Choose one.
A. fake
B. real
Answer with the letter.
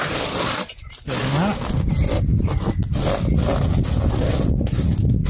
B